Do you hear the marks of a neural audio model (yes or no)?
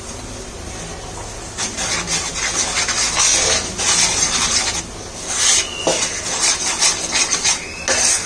no